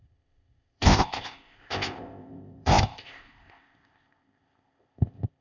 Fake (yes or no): yes